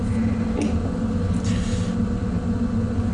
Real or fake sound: real